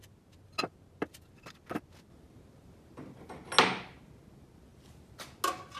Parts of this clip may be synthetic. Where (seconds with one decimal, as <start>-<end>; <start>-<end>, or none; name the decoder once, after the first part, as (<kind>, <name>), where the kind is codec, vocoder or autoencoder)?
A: none